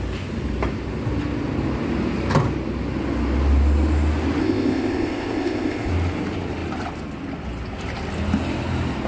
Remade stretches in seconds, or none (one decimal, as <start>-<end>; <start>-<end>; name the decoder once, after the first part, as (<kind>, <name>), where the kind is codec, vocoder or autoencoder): 4.4-5.9 (codec, ZipCodec)